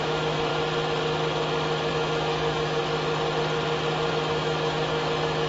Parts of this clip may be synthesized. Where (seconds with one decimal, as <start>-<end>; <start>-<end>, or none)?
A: 0.0-0.5; 1.9-2.8; 4.1-5.5